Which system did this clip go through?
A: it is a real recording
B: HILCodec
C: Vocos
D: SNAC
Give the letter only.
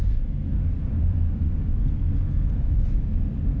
D